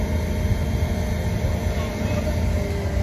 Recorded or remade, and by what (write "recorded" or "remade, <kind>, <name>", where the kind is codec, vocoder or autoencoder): recorded